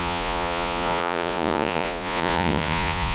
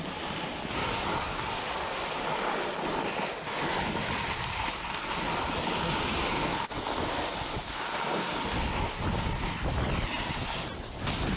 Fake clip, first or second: first